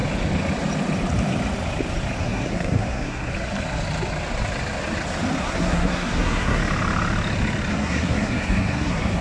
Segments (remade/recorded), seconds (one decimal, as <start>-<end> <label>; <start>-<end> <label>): 0.0-2.2 recorded; 2.2-3.3 remade; 3.3-5.4 recorded; 5.4-6.6 remade; 6.6-7.7 recorded; 7.7-9.2 remade